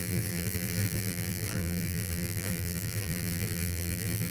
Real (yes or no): no